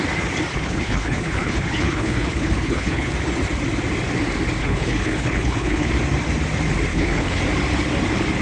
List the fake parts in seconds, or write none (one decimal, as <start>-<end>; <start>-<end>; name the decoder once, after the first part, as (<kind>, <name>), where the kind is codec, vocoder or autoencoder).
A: 0.5-3.1 (codec, HILCodec); 4.6-5.9; 6.9-7.4

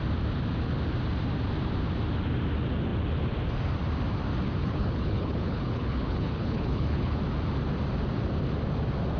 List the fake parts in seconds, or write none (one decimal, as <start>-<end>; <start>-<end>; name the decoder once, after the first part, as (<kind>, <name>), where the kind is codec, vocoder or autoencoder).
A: 4.6-7.2 (codec, HILCodec)